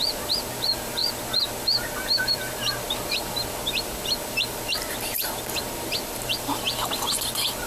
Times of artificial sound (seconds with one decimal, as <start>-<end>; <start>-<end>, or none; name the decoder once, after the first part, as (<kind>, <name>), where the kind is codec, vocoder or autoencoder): none